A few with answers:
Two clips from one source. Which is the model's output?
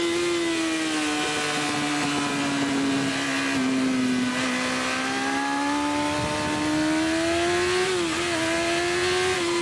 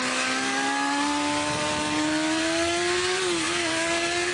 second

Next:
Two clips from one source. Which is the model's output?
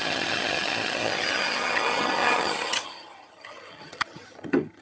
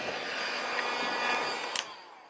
first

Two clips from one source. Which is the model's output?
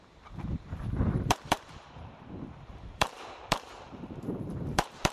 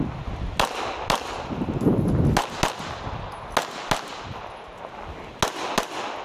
first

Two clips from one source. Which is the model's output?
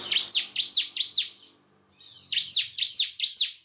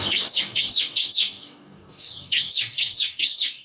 second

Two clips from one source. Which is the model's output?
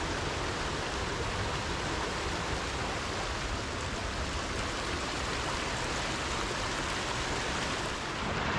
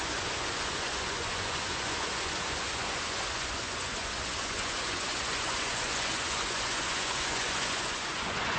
second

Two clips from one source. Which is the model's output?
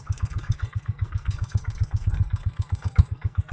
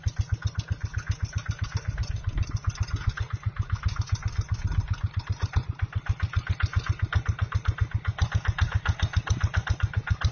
first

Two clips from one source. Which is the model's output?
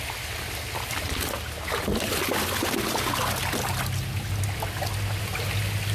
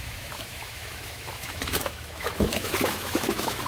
second